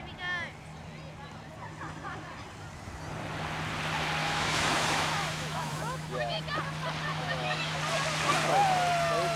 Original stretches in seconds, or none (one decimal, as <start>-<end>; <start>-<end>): 0.0-4.2; 6.4-7.1; 7.8-9.4